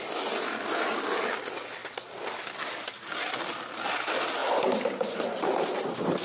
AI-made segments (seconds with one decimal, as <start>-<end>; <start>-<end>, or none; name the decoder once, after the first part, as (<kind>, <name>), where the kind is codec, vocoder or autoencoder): none